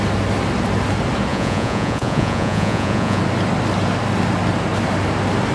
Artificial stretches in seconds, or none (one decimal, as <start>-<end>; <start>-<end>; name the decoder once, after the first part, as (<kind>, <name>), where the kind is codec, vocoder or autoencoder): 1.3-3.2 (vocoder, Vocos)